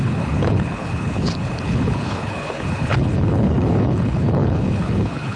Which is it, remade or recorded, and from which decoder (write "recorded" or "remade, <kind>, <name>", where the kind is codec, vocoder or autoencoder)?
remade, codec, HILCodec